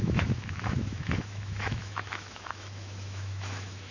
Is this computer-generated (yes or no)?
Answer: yes